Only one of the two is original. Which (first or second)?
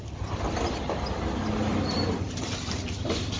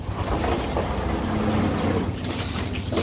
second